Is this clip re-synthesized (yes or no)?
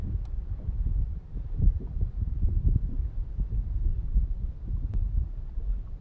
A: yes